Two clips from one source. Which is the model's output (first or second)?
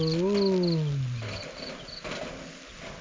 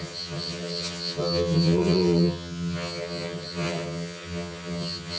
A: second